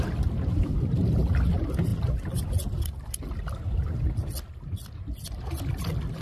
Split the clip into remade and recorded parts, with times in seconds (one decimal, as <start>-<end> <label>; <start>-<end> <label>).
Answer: 0.0-6.2 recorded